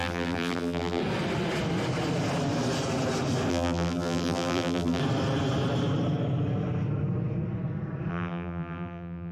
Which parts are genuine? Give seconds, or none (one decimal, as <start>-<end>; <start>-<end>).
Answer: 1.0-3.5; 5.0-8.1